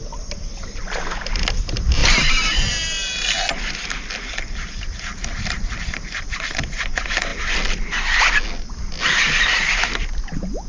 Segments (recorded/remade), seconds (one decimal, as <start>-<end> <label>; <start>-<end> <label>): 0.0-2.0 recorded; 2.0-2.6 remade; 2.6-5.1 recorded; 5.1-6.6 remade; 6.6-10.7 recorded